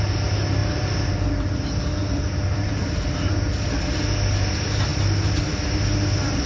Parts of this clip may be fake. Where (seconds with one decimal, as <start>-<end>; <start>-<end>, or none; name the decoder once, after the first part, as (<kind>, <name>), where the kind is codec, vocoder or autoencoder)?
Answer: none